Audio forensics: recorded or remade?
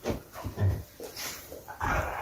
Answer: remade